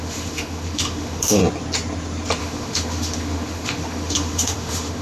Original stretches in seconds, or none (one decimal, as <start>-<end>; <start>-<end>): 1.4-2.4